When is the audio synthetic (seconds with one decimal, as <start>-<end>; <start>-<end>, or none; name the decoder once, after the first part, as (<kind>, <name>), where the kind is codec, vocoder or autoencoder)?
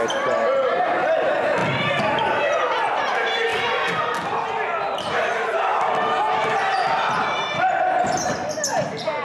1.6-2.4 (vocoder, BigVGAN v2); 3.5-4.0